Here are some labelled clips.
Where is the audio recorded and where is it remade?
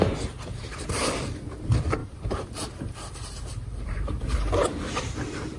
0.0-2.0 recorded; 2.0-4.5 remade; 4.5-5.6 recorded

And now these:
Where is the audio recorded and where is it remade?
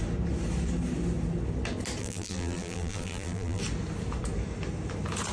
0.0-2.0 recorded; 2.0-3.6 remade; 3.6-5.3 recorded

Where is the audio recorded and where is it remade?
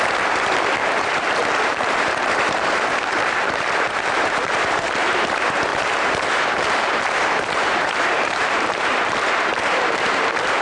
0.0-0.8 recorded; 0.8-5.3 remade; 5.3-5.7 recorded; 5.7-9.9 remade; 9.9-10.6 recorded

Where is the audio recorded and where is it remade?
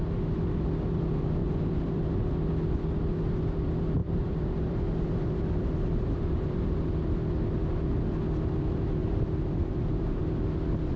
0.0-1.4 recorded; 1.4-2.2 remade; 2.2-4.0 recorded; 4.0-6.6 remade; 6.6-9.0 recorded; 9.0-10.2 remade; 10.2-11.0 recorded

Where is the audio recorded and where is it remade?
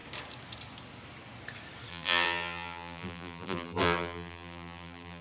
0.0-1.9 recorded; 1.9-5.2 remade